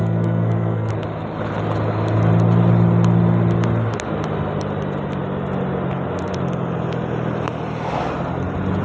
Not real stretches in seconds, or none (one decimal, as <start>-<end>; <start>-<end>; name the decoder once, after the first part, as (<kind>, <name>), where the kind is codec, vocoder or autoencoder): 0.0-0.9 (codec, SNAC)